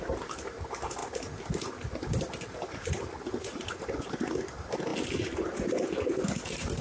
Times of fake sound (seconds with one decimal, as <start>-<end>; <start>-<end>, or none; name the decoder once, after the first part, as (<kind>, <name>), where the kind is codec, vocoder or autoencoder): none